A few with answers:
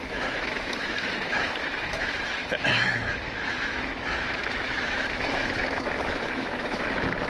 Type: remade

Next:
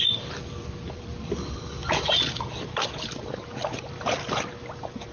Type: remade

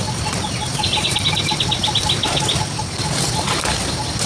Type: recorded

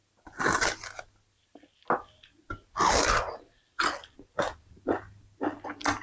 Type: recorded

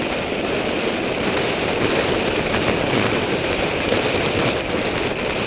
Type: recorded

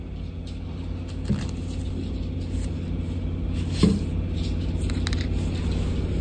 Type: recorded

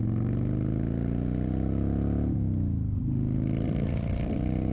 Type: recorded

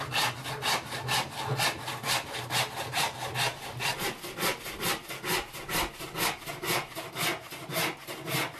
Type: recorded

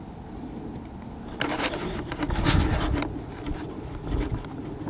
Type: recorded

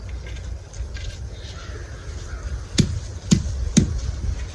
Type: recorded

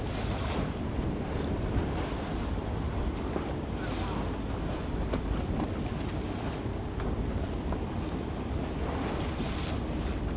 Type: recorded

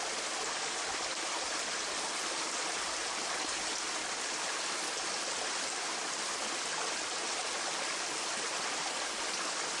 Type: recorded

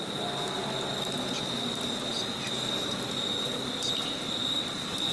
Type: recorded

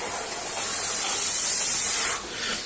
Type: recorded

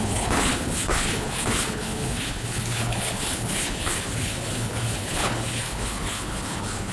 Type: remade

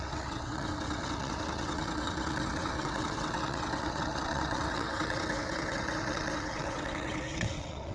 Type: remade